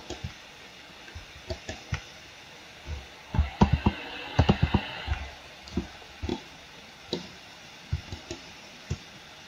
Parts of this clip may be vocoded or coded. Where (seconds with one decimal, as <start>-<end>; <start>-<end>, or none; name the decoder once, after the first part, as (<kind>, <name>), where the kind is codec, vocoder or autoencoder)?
6.3-7.4 (vocoder, BigVGAN v2); 8.0-8.8